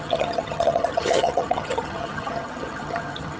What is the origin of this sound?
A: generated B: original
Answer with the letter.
A